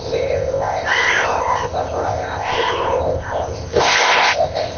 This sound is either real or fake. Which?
fake